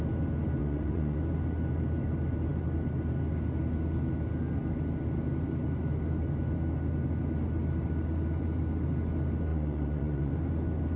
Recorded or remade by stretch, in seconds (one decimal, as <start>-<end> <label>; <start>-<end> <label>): 0.0-0.6 recorded; 0.6-1.2 remade; 1.2-9.5 recorded; 9.5-10.3 remade; 10.3-11.0 recorded

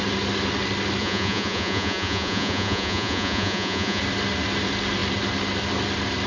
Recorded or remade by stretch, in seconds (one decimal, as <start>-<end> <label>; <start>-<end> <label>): 0.0-1.0 recorded; 1.0-4.0 remade; 4.0-6.3 recorded

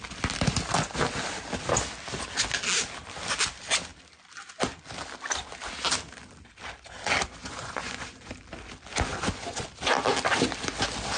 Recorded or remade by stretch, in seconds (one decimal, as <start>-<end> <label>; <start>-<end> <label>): 0.0-7.4 recorded; 7.4-8.3 remade; 8.3-9.1 recorded; 9.1-9.6 remade; 9.6-11.2 recorded